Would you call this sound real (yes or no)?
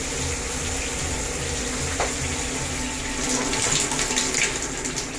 yes